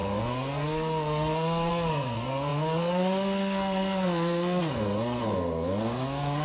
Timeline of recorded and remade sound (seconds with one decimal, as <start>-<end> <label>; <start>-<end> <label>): 0.0-6.4 remade